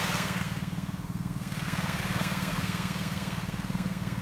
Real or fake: fake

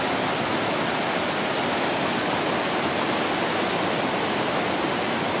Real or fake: real